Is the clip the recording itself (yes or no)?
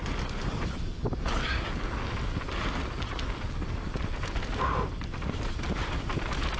yes